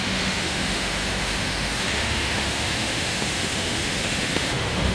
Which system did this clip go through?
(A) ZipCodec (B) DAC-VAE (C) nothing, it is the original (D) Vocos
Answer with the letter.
B